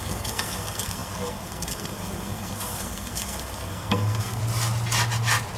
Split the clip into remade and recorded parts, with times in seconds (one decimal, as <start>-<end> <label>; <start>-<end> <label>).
0.0-4.4 remade; 4.4-5.6 recorded